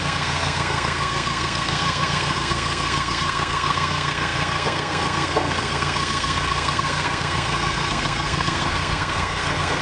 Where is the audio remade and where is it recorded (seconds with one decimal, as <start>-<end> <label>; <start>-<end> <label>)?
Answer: 0.0-9.8 remade